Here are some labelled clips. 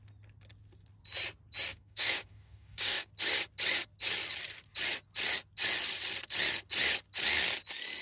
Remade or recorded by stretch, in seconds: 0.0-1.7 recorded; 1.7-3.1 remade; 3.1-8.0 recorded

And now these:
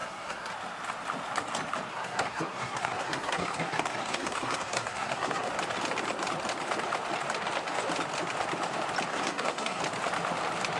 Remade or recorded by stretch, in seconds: 0.0-0.5 remade; 0.5-1.9 recorded; 1.9-5.5 remade; 5.5-9.1 recorded; 9.1-9.8 remade; 9.8-10.8 recorded